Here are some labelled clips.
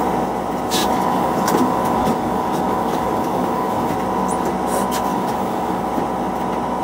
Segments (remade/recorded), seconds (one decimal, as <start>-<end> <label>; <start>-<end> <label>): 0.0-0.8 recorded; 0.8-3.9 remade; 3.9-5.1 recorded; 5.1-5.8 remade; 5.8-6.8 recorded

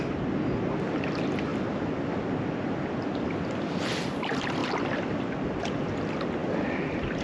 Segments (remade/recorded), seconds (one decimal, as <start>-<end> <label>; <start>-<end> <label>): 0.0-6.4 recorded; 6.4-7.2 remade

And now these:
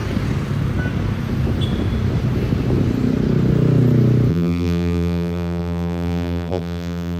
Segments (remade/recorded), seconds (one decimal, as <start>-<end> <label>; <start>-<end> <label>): 0.0-4.3 recorded; 4.3-7.2 remade